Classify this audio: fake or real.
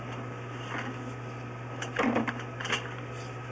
real